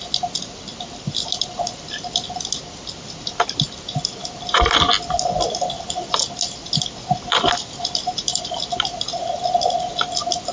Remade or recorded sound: recorded